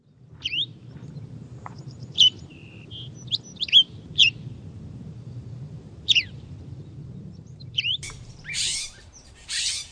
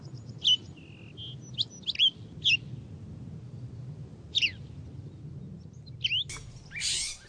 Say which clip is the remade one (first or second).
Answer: first